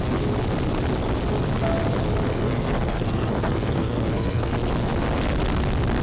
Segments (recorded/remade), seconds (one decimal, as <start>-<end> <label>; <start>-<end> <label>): 0.0-2.3 recorded; 2.3-4.5 remade; 4.5-6.0 recorded